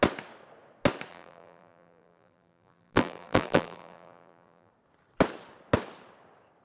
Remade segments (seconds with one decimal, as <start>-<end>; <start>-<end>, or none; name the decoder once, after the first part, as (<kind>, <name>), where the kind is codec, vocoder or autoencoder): 1.1-4.7 (vocoder, BigVGAN v2)